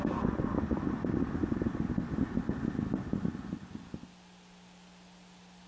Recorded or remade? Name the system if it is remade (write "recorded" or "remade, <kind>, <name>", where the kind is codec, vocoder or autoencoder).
recorded